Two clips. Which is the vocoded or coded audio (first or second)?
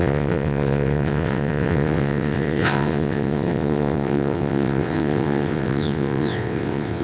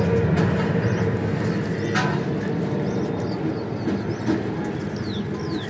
first